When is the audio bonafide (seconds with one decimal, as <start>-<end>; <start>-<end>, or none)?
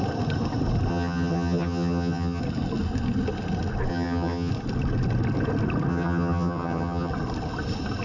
0.0-0.9; 2.4-3.9; 4.5-5.9; 7.1-8.0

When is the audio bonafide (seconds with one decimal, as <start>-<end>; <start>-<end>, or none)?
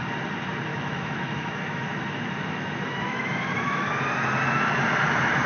0.0-0.7; 4.0-5.5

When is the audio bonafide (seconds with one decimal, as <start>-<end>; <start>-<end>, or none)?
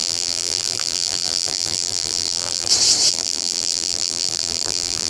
2.7-3.1